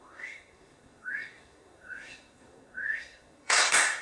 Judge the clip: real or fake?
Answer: fake